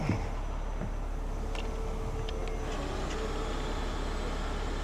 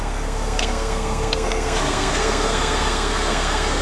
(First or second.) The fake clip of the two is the second